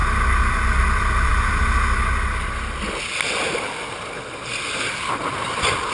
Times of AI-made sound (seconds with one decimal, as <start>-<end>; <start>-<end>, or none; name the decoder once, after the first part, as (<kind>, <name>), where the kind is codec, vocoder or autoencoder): none